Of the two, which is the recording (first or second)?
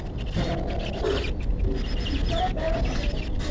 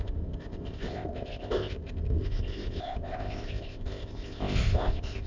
first